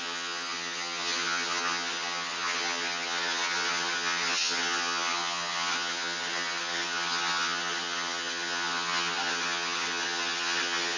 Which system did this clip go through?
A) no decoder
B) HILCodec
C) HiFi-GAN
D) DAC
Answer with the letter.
C